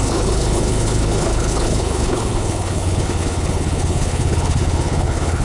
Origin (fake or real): fake